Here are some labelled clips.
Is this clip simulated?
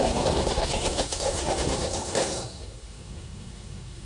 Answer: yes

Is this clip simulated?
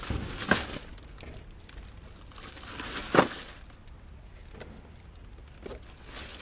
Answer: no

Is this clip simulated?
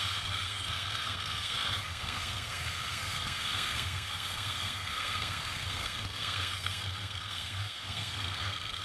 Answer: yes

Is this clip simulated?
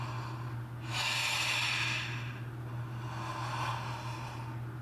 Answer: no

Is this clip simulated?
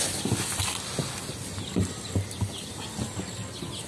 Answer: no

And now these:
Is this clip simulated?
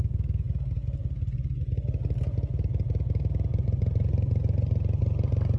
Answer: no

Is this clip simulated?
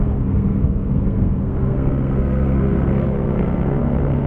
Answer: yes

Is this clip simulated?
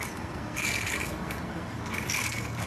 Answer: yes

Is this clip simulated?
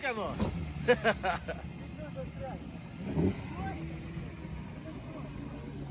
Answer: no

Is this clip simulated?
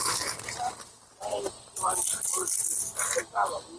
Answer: no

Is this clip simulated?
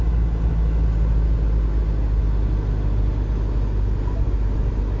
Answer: no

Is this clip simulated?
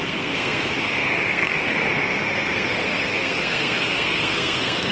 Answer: yes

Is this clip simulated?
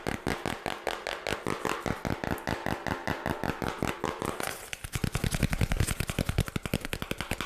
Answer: no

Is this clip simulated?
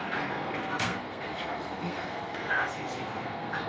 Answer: yes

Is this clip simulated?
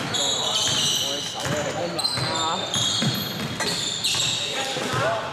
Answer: no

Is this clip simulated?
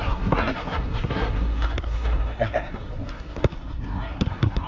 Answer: yes